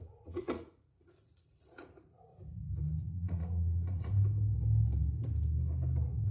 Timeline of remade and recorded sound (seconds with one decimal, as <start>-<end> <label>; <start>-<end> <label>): 0.0-2.3 remade; 2.3-3.0 recorded; 3.0-4.1 remade; 4.1-6.3 recorded